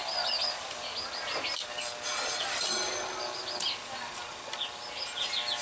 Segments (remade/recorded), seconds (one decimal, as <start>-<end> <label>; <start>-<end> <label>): 0.0-5.6 recorded